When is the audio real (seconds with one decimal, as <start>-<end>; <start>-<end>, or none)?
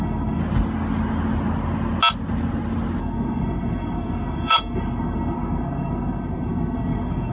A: 0.4-3.0